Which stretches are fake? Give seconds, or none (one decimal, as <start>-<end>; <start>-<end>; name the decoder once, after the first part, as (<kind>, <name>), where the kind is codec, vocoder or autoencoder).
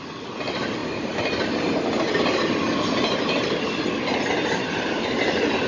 none